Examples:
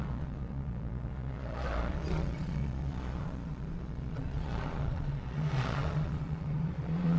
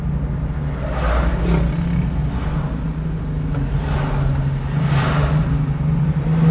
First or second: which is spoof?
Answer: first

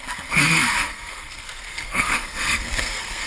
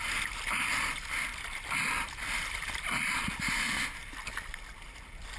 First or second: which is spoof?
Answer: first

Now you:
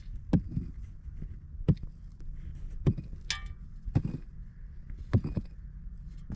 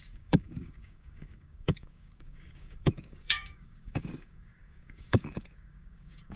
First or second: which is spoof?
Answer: second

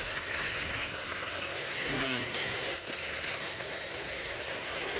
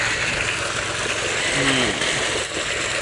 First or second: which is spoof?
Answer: first